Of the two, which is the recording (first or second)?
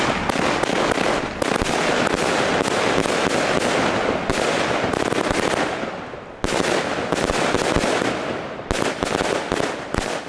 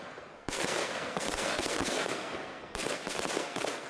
first